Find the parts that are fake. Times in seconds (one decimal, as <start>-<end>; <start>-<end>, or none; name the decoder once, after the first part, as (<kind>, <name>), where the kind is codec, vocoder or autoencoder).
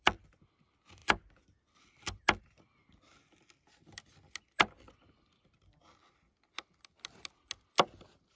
none